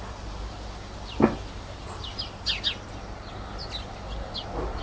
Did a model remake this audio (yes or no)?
no